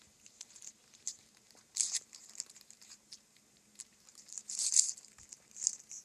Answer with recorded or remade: remade